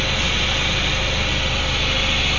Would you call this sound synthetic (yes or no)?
no